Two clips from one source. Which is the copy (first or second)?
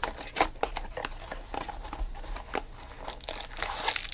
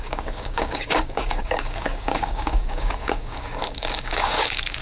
second